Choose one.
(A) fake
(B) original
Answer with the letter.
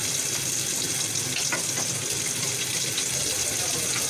B